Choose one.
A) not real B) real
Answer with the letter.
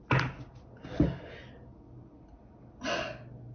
B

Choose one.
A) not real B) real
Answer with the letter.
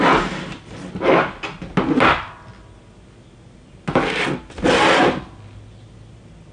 B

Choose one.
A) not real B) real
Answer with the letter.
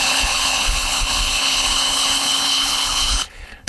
A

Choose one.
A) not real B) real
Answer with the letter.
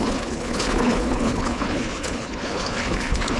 A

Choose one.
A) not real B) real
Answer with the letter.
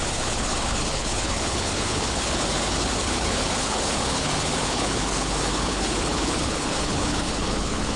A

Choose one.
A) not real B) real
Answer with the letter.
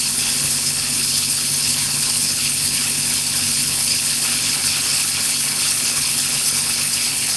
A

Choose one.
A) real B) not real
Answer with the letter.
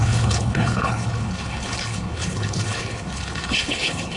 B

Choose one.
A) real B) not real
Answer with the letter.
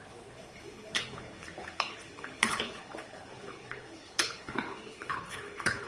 B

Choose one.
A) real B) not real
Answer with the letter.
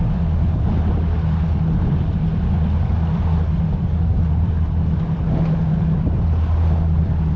A